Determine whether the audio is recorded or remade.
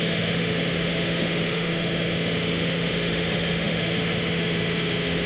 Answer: remade